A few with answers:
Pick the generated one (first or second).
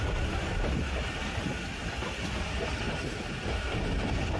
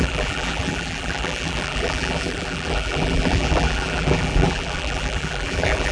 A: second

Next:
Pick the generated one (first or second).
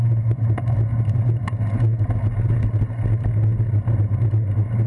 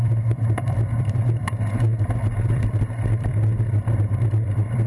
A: second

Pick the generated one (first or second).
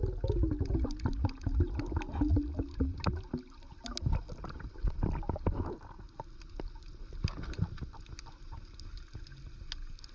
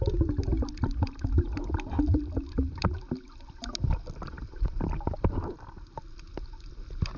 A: second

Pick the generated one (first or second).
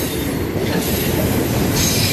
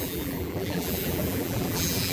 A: second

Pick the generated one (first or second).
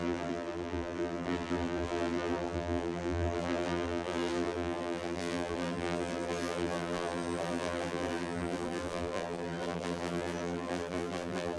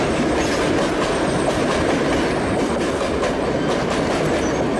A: first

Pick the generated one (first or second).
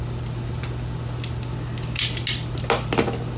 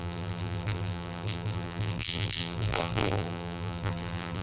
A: second